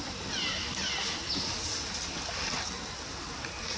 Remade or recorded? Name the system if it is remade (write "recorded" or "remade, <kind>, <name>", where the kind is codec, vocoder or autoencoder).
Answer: recorded